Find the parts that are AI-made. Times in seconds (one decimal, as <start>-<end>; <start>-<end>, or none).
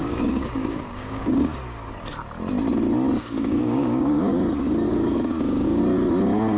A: 0.0-1.5; 3.2-4.3; 4.9-5.8